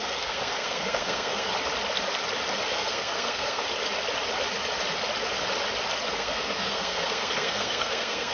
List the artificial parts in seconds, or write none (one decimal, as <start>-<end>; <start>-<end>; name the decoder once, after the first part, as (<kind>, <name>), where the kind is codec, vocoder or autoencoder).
0.0-1.5 (codec, SNAC); 2.7-3.6; 6.1-8.3